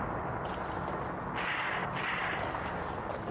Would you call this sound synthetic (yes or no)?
no